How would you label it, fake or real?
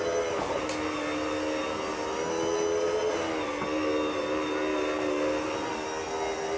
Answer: real